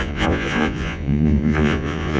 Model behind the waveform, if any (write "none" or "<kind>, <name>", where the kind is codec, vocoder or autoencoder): vocoder, Vocos